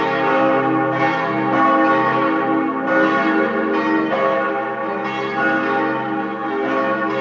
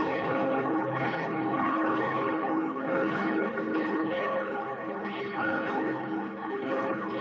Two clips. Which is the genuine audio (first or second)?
first